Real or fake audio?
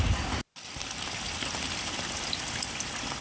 real